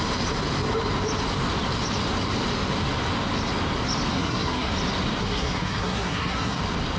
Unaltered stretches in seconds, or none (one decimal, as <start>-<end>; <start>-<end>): 0.0-4.1; 4.7-5.2; 6.6-7.0